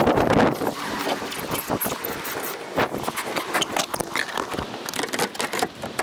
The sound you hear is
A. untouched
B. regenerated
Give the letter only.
A